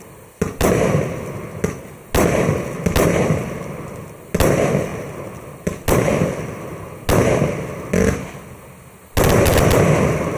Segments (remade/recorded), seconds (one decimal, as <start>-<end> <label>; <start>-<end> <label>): 0.0-10.4 recorded